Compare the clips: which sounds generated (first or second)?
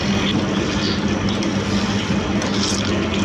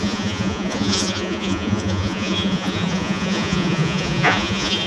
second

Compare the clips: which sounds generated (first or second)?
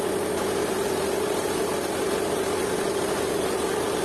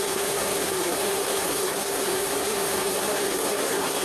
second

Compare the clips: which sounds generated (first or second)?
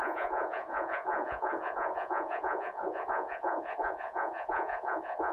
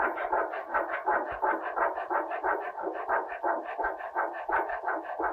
first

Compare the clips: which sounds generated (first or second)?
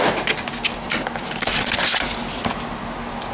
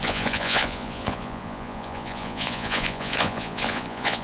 second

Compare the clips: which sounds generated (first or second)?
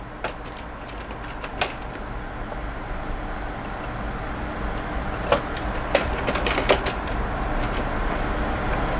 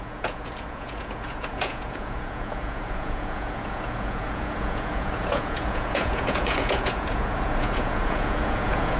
second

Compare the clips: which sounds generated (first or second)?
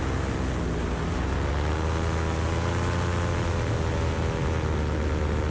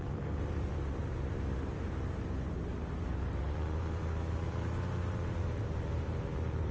second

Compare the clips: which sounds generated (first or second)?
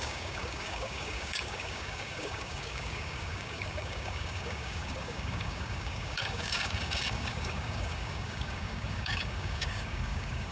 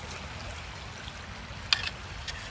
first